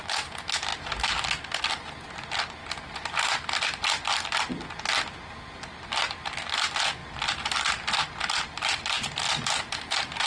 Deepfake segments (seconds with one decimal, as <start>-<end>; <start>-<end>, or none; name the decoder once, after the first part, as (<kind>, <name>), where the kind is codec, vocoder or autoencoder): none